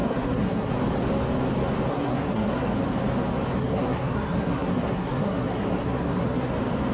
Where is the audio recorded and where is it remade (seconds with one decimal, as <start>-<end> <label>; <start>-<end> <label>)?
0.0-0.7 remade; 0.7-1.9 recorded; 1.9-2.7 remade; 2.7-3.6 recorded; 3.6-6.5 remade; 6.5-6.9 recorded